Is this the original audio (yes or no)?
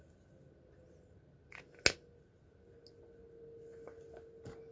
yes